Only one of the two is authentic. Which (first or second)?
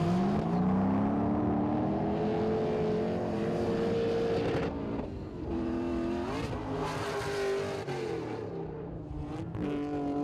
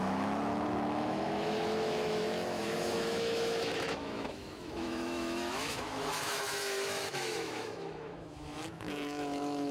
first